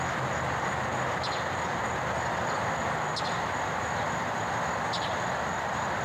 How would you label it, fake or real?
real